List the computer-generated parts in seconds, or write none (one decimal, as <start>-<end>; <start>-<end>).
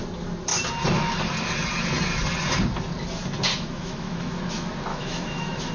3.5-4.4; 4.9-5.7